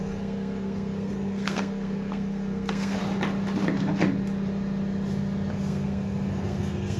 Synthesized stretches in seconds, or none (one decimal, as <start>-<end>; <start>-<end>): 0.0-3.0; 5.5-7.0